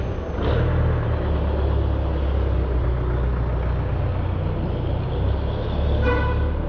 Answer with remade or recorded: recorded